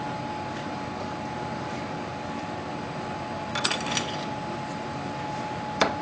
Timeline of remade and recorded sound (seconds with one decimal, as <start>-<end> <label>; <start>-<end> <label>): 0.0-6.0 recorded